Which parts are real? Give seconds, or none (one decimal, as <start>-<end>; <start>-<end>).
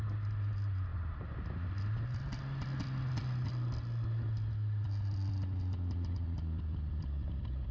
0.0-7.7